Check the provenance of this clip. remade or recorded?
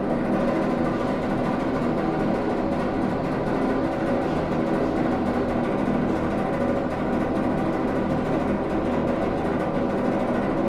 recorded